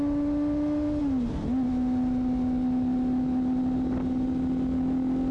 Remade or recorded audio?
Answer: recorded